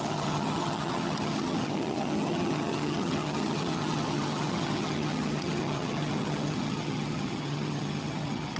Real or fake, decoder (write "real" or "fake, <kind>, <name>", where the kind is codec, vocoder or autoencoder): fake, vocoder, HiFi-GAN